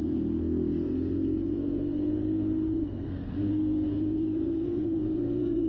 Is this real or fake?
fake